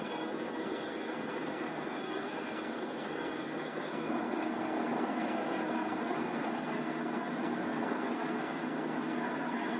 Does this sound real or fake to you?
fake